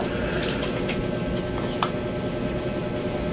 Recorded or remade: recorded